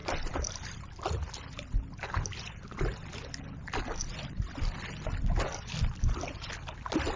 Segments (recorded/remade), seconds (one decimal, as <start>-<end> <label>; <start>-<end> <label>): 0.0-7.2 recorded